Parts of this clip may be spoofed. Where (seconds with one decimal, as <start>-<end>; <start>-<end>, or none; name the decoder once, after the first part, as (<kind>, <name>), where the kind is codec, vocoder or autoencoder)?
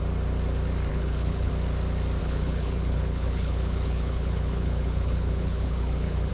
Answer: 0.9-1.5 (codec, HILCodec); 2.2-6.3